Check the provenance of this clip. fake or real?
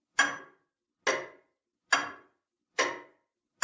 real